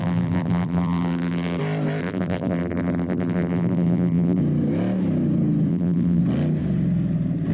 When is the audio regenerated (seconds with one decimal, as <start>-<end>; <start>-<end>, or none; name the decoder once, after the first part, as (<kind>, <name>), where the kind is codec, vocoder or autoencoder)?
0.0-1.6 (vocoder, BigVGAN v2); 2.0-4.4; 5.7-6.2